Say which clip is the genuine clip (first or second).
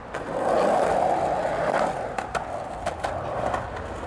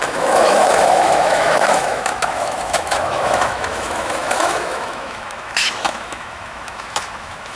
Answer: first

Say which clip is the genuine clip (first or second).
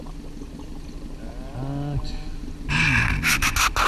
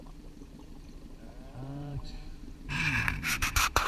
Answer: first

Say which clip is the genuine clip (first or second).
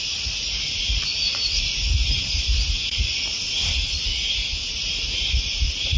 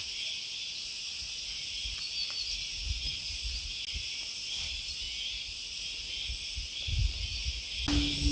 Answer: second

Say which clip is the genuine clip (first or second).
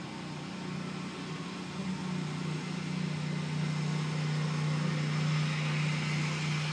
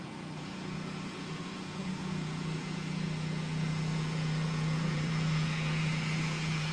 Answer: first